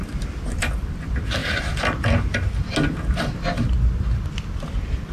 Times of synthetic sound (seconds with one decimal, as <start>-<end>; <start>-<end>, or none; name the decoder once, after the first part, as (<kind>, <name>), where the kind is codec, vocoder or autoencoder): none